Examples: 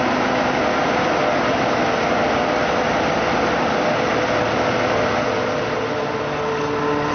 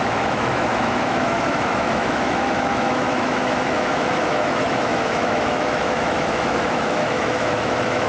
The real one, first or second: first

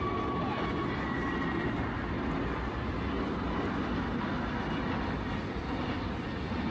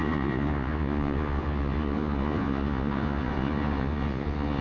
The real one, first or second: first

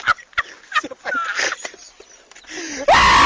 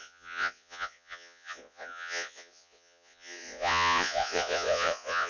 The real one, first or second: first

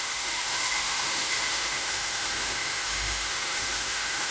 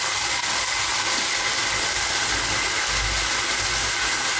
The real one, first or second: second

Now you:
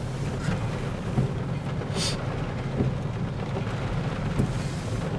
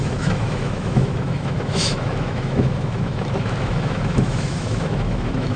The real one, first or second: first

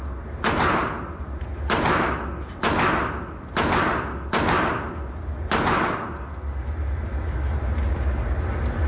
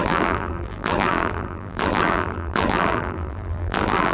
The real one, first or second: first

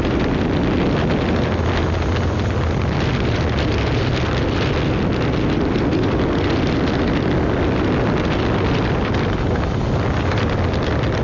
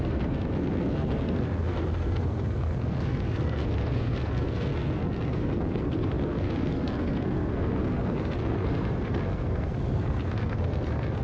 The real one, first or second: first